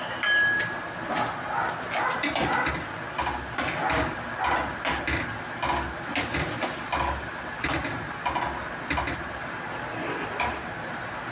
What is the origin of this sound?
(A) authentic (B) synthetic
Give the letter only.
A